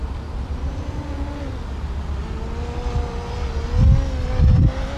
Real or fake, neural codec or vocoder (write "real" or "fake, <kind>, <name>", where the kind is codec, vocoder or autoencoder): real